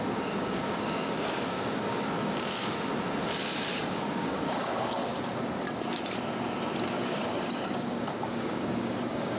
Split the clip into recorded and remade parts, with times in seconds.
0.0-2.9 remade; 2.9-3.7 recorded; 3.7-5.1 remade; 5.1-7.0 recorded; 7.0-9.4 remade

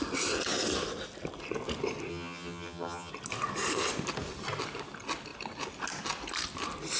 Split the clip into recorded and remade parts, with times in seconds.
0.0-2.1 recorded; 2.1-3.1 remade; 3.1-7.0 recorded

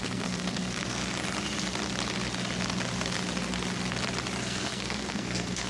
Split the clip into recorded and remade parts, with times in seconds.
0.0-1.0 remade; 1.0-4.4 recorded; 4.4-5.7 remade

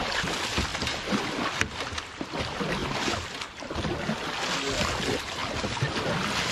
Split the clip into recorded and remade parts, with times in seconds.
0.0-6.5 recorded

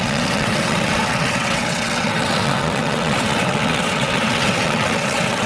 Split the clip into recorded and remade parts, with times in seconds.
0.0-5.5 remade

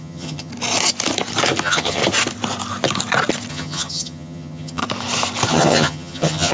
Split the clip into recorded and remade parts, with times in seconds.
0.0-0.5 remade; 0.5-1.6 recorded; 1.6-2.0 remade; 2.0-3.5 recorded; 3.5-4.8 remade; 4.8-5.5 recorded; 5.5-6.5 remade

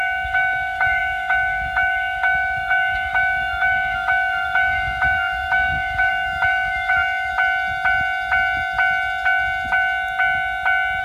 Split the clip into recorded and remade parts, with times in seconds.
0.0-7.3 remade; 7.3-11.0 recorded